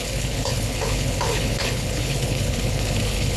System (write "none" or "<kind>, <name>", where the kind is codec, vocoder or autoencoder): codec, HILCodec